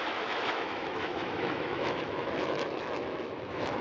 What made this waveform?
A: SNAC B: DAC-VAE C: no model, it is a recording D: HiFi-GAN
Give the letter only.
B